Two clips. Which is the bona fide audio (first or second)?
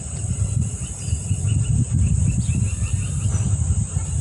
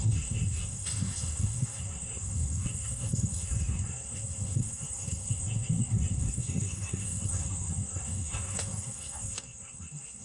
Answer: first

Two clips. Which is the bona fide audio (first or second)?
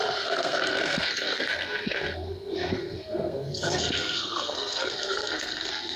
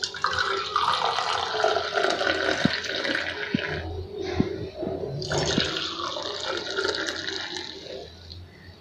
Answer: second